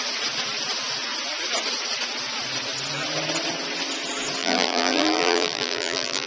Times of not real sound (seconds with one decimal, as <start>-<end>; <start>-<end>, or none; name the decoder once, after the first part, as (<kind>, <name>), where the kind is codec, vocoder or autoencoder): 4.4-6.3 (vocoder, BigVGAN v2)